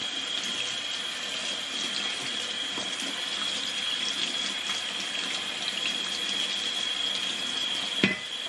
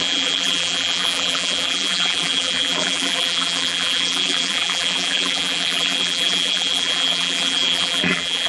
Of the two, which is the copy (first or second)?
second